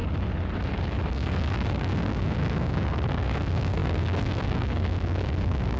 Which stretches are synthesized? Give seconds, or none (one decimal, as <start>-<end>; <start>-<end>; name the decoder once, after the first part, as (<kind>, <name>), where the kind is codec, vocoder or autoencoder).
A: 0.7-5.8 (codec, DAC)